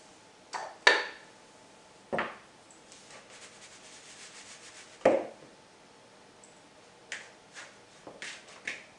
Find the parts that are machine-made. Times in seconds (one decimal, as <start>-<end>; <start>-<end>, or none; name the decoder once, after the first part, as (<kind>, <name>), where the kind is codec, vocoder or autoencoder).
none